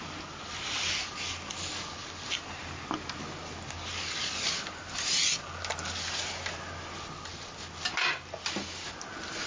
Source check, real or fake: real